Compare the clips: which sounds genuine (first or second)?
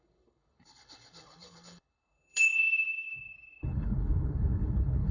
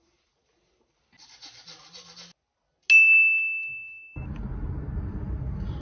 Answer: second